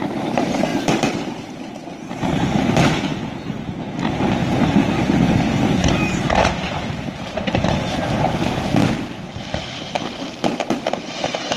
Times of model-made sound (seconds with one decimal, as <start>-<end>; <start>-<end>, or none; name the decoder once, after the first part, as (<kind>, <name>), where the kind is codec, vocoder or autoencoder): 0.0-0.7 (vocoder, BigVGAN v2); 2.1-3.1; 5.8-8.8; 10.8-11.6